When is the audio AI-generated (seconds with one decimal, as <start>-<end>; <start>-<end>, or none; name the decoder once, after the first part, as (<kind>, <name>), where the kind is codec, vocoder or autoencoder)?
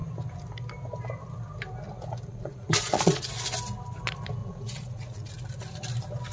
2.3-3.3 (vocoder, Vocos); 4.4-5.3